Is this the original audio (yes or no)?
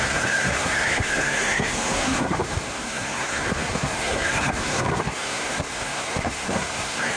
no